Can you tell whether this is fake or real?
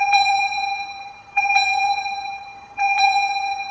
fake